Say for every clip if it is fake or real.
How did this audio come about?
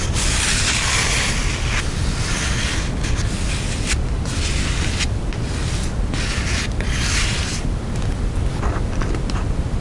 real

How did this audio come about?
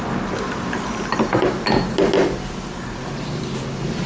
real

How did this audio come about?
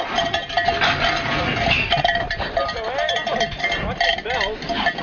real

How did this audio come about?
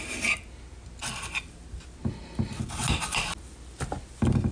real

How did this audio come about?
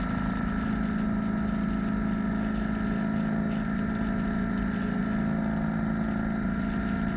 real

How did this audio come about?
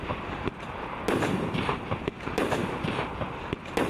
real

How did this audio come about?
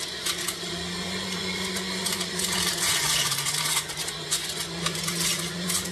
fake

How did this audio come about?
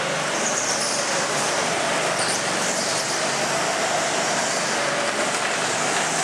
real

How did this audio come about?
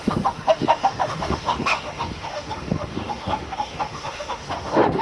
fake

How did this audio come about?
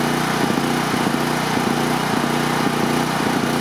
real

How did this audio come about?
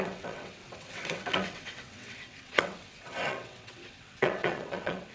fake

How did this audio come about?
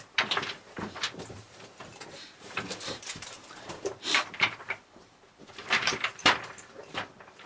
fake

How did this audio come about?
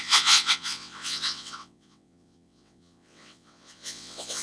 fake